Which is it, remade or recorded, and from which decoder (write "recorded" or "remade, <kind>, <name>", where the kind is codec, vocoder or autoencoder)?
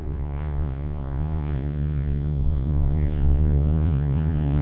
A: remade, vocoder, Vocos